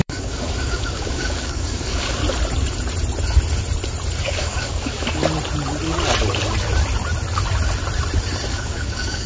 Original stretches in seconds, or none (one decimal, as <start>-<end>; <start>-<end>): 2.2-4.2; 5.2-8.5